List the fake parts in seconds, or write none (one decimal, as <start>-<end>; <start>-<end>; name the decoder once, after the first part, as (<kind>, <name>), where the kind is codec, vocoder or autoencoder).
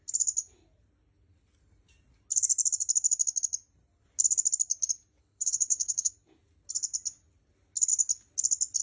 5.2-6.1 (codec, HILCodec)